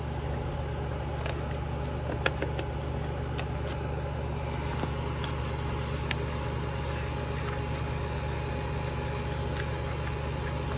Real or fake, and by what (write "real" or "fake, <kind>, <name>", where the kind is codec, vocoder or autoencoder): real